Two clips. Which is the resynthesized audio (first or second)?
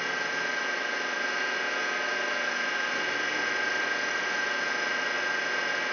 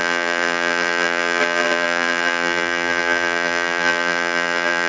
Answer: second